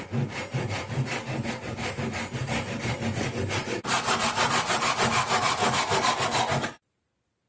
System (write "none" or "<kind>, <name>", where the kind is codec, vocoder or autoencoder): none